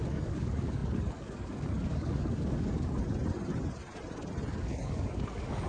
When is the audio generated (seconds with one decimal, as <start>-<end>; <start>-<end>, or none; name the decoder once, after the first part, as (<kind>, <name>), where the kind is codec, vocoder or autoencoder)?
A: 0.0-3.0 (codec, DAC); 4.5-5.7